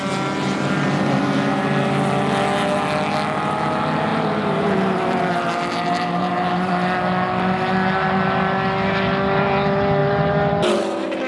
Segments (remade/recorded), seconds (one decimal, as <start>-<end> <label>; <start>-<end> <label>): 0.0-4.1 recorded; 4.1-6.7 remade; 6.7-10.0 recorded; 10.0-10.8 remade; 10.8-11.3 recorded